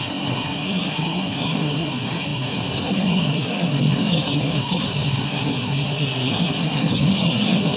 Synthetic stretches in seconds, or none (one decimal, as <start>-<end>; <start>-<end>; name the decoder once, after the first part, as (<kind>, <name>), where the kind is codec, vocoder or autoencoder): 0.0-7.8 (codec, SNAC)